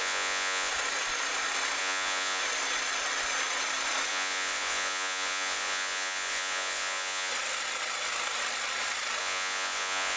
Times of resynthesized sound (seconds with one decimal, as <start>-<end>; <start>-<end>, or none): 0.0-0.7; 1.8-2.4; 4.1-7.3; 9.2-10.2